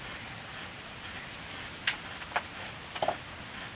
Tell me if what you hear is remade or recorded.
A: recorded